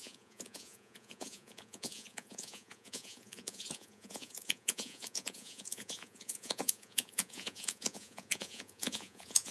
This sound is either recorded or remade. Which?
remade